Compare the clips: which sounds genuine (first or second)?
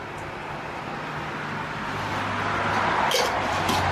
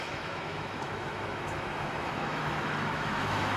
first